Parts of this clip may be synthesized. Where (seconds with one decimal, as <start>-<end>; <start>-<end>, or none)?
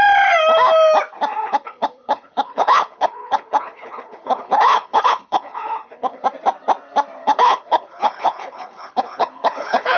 1.4-6.2; 7.2-10.0